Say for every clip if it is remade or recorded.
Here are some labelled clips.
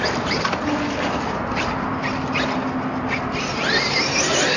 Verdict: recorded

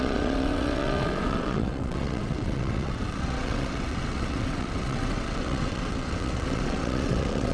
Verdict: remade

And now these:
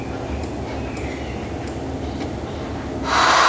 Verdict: recorded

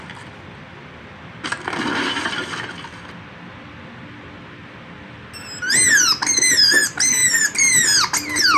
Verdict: recorded